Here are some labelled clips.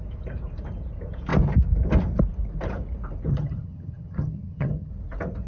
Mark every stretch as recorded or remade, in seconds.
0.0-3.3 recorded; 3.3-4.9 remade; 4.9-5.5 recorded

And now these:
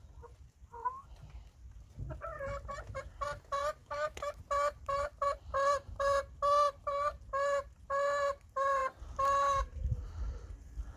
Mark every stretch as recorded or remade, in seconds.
0.0-3.8 recorded; 3.8-4.4 remade; 4.4-11.0 recorded

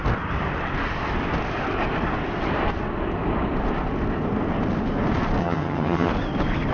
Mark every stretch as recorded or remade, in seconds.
0.0-5.4 recorded; 5.4-6.1 remade; 6.1-6.7 recorded

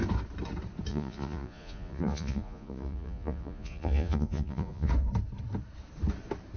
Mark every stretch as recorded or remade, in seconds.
0.0-0.9 recorded; 0.9-4.9 remade; 4.9-6.6 recorded

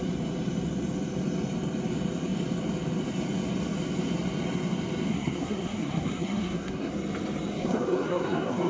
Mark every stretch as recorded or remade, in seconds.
0.0-5.1 recorded; 5.1-6.9 remade; 6.9-7.5 recorded; 7.5-8.7 remade

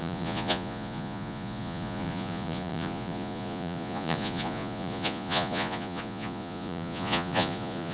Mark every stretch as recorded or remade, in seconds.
0.0-7.9 remade

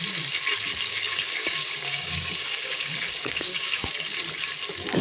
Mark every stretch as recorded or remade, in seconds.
0.0-0.9 recorded; 0.9-3.9 remade; 3.9-5.0 recorded